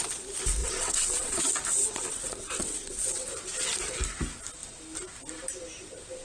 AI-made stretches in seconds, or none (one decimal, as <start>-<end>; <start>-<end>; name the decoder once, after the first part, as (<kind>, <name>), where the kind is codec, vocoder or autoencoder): 0.6-1.4 (vocoder, WaveNeXt); 2.1-3.3